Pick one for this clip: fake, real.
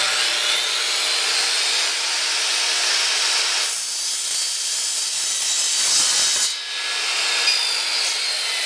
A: real